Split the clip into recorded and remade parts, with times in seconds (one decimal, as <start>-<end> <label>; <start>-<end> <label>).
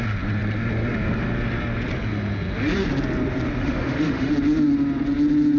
0.0-3.6 recorded; 3.6-4.3 remade; 4.3-5.6 recorded